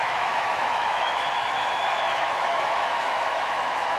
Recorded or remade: remade